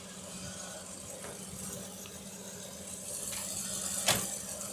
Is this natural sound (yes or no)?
yes